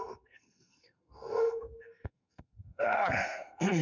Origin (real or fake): fake